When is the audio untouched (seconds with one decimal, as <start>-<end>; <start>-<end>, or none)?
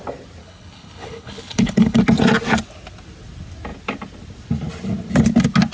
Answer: 0.0-0.4; 2.0-5.7